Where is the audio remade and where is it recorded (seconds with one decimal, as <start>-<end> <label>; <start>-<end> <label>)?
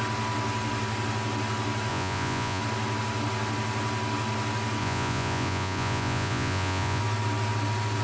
0.0-1.9 recorded; 1.9-2.6 remade; 2.6-4.8 recorded; 4.8-7.0 remade; 7.0-8.0 recorded